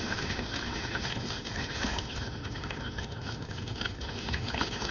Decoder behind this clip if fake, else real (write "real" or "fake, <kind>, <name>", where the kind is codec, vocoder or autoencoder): fake, autoencoder, DAC-VAE